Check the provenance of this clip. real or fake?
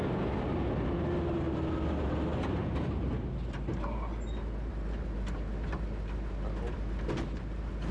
real